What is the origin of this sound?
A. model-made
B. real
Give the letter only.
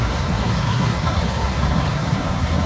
A